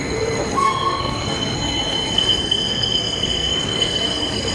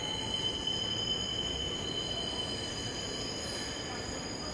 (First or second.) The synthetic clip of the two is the first